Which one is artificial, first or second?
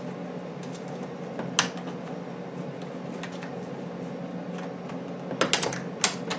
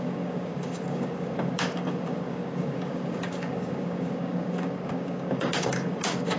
second